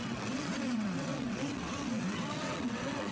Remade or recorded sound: remade